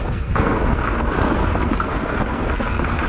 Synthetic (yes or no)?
yes